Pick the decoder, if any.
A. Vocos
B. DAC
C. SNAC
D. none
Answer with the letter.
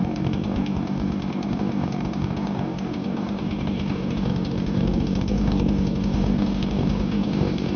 B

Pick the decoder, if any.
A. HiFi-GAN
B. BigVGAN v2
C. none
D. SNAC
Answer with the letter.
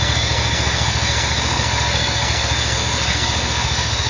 D